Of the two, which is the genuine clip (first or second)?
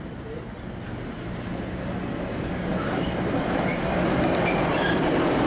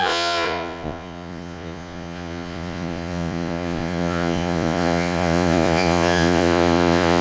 first